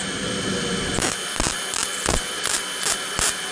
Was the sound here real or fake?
real